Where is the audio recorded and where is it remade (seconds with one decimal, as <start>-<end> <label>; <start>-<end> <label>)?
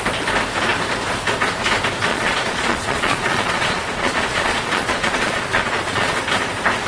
0.0-2.1 recorded; 2.1-6.2 remade; 6.2-6.9 recorded